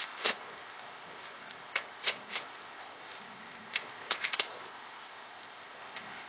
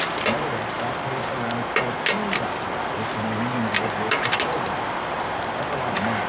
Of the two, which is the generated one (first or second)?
first